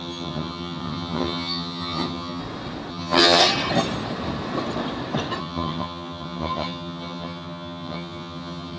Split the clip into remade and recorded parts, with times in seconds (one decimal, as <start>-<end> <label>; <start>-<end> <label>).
0.0-2.4 remade; 2.4-2.9 recorded; 2.9-3.4 remade; 3.4-5.4 recorded; 5.4-8.8 remade